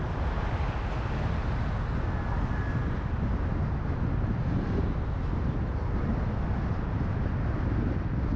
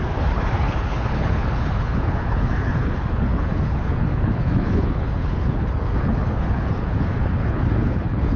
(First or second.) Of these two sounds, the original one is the first